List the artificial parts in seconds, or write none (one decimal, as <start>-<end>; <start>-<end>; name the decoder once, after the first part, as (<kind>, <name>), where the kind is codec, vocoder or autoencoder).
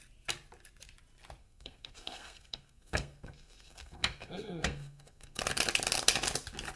1.4-5.4 (codec, SNAC)